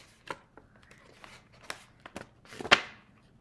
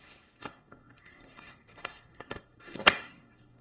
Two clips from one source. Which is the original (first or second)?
first